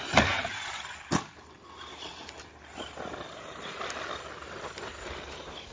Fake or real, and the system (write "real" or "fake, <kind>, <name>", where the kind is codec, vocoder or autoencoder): real